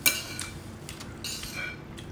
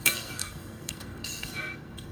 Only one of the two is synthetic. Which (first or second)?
second